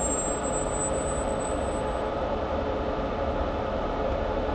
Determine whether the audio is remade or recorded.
recorded